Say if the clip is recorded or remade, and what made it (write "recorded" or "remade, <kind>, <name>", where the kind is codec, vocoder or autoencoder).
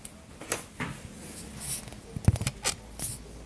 recorded